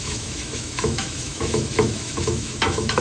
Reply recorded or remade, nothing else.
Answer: remade